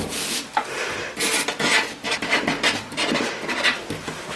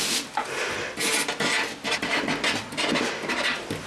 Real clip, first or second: second